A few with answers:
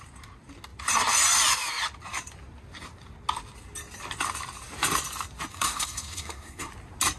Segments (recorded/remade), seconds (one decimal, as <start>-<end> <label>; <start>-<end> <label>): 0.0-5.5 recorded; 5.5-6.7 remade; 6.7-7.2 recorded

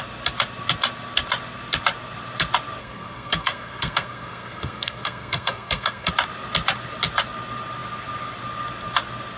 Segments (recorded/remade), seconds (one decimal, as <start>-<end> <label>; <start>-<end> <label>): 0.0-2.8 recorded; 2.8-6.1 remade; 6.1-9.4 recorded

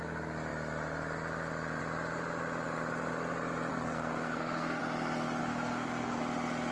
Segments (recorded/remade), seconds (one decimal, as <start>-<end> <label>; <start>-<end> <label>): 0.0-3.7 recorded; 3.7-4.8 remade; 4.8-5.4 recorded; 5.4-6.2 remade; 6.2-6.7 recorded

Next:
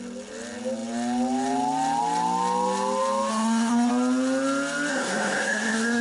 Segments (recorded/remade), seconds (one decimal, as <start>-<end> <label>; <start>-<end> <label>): 0.0-3.3 recorded; 3.3-3.9 remade; 3.9-4.9 recorded; 4.9-6.0 remade

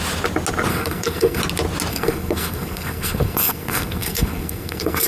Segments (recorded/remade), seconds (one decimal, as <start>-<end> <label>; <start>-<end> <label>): 0.0-0.7 recorded; 0.7-1.4 remade; 1.4-1.9 recorded; 1.9-5.1 remade

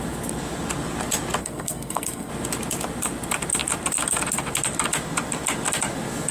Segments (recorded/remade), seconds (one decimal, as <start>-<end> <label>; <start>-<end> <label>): 0.0-1.4 recorded; 1.4-2.3 remade; 2.3-6.3 recorded

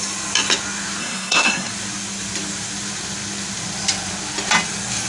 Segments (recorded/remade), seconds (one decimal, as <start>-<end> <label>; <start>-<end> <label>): 0.0-1.0 recorded; 1.0-1.7 remade; 1.7-5.1 recorded

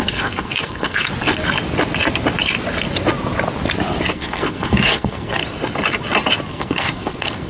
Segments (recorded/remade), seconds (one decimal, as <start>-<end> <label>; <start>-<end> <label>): 0.0-1.1 remade; 1.1-4.1 recorded; 4.1-5.4 remade; 5.4-6.5 recorded; 6.5-7.5 remade